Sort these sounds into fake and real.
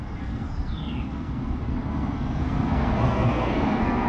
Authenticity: fake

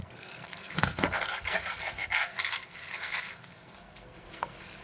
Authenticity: fake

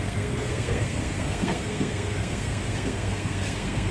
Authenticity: fake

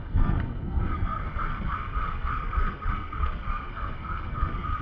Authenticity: fake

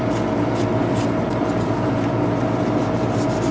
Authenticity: real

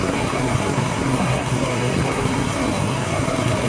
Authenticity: fake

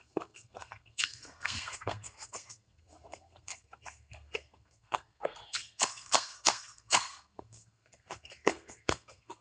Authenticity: fake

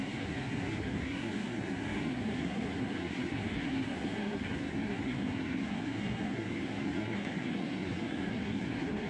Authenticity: fake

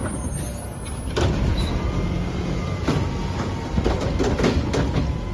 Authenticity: real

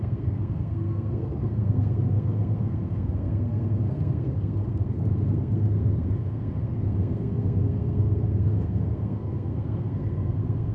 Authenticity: fake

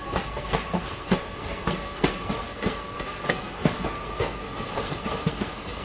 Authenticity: fake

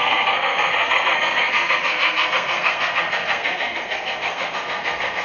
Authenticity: fake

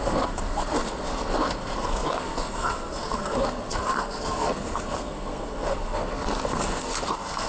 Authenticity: fake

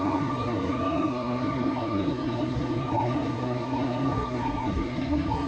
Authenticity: fake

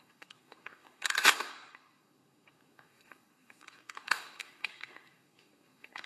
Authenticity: fake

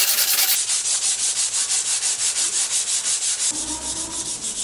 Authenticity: real